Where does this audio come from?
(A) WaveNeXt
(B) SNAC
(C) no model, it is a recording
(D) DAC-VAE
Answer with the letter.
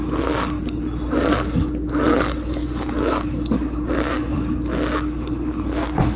C